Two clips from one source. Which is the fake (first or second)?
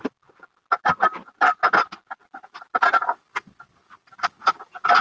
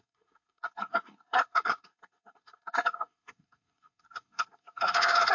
second